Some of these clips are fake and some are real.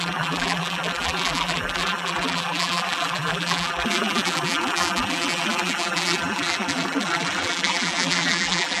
fake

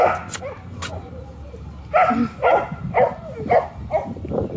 real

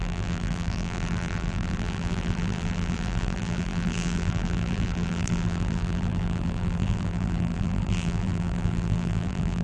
fake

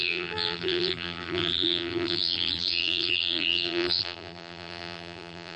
fake